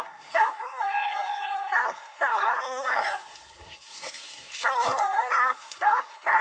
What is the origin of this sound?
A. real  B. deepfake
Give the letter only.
B